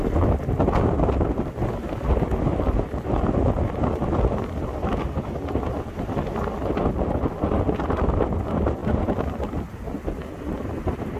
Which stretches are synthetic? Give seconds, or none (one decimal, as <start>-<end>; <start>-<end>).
none